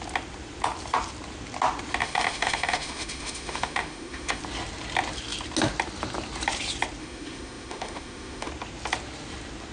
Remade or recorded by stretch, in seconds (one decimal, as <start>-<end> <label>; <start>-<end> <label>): 0.0-2.0 recorded; 2.0-4.4 remade; 4.4-7.0 recorded; 7.0-8.5 remade; 8.5-9.7 recorded